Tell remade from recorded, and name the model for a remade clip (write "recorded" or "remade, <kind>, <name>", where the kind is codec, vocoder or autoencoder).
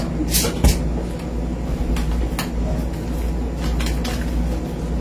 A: recorded